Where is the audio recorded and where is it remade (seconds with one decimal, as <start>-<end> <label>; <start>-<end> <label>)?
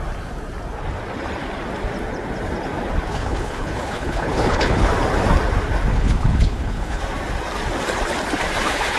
0.0-3.1 recorded; 3.1-4.9 remade; 4.9-5.9 recorded; 5.9-7.0 remade; 7.0-9.0 recorded